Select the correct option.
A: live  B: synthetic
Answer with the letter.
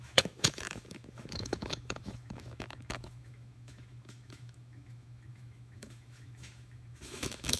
B